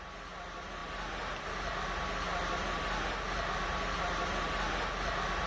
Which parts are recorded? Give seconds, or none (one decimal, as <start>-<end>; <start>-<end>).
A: 0.0-5.5